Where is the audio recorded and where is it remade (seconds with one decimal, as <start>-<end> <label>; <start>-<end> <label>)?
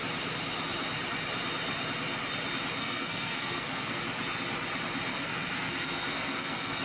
0.0-2.8 recorded; 2.8-4.0 remade; 4.0-5.1 recorded; 5.1-6.8 remade